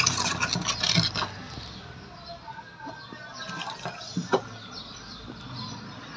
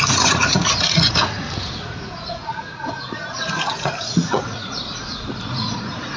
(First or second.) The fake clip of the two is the second